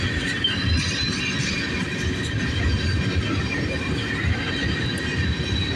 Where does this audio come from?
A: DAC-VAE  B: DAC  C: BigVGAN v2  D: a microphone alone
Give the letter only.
D